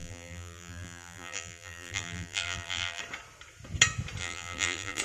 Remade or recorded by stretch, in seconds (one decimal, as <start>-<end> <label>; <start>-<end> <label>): 0.0-3.0 remade; 3.0-4.2 recorded; 4.2-5.0 remade